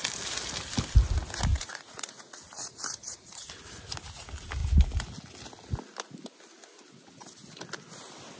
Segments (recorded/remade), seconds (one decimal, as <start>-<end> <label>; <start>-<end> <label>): 0.0-1.5 recorded; 1.5-3.5 remade; 3.5-8.4 recorded